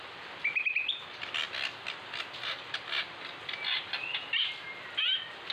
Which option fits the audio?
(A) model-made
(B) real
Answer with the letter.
B